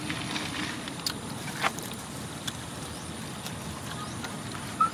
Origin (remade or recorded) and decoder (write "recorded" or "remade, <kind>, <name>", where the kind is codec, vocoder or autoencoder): recorded